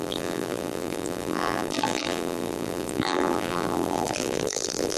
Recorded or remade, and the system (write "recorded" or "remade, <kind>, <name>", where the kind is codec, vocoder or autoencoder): remade, vocoder, BigVGAN v2